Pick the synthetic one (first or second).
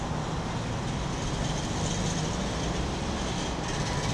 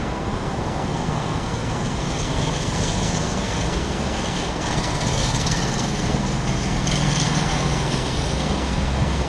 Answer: second